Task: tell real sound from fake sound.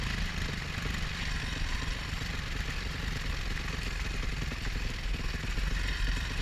real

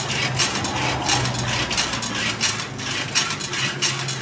real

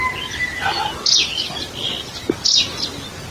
real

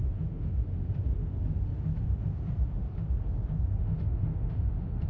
fake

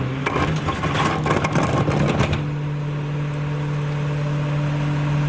real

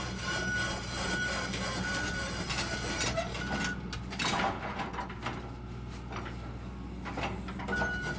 real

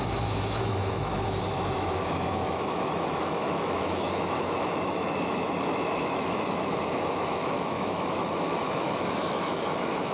fake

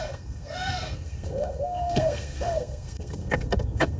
fake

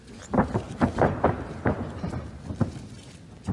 real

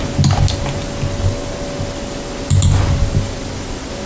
real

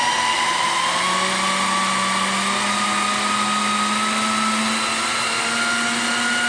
real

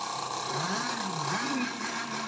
fake